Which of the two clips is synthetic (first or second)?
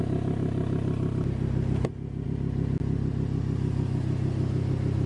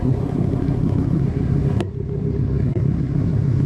second